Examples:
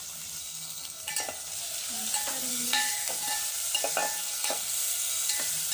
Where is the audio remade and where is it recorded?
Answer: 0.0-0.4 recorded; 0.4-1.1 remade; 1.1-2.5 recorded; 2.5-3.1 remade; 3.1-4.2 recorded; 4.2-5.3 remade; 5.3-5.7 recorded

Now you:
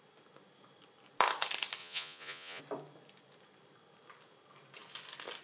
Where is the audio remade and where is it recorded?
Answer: 0.0-1.8 recorded; 1.8-2.6 remade; 2.6-5.4 recorded

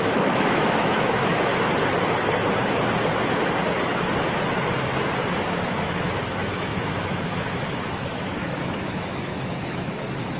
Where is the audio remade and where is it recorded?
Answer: 0.0-1.5 remade; 1.5-5.5 recorded; 5.5-10.4 remade

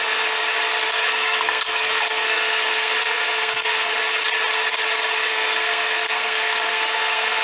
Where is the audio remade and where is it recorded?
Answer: 0.0-0.4 remade; 0.4-0.9 recorded; 0.9-3.9 remade; 3.9-5.3 recorded; 5.3-7.4 remade